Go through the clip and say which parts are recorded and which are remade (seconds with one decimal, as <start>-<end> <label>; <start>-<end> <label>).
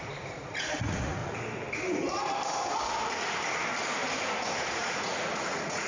0.0-1.2 remade; 1.2-4.7 recorded; 4.7-5.9 remade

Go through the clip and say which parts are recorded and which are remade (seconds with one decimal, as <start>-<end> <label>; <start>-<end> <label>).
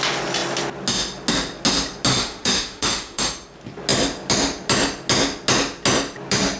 0.0-2.1 recorded; 2.1-3.2 remade; 3.2-6.6 recorded